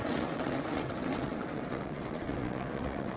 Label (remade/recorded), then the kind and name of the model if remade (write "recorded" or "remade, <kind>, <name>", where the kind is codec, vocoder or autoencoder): remade, vocoder, WaveNeXt